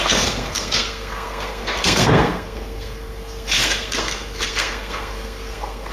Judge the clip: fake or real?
fake